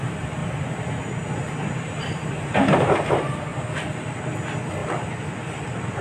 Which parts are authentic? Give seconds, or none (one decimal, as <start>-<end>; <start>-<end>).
0.0-0.4; 3.1-4.8; 5.5-6.0